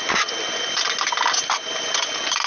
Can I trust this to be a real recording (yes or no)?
yes